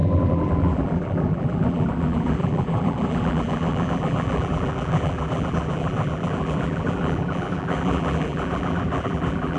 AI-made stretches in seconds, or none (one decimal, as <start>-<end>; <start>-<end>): 0.0-9.6